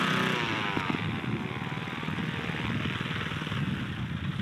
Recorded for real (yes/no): yes